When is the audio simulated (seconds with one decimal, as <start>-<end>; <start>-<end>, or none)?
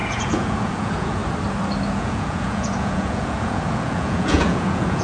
0.0-1.2; 1.9-5.0